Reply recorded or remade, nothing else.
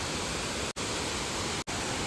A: recorded